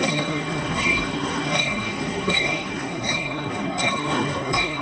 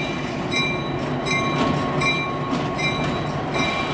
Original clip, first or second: second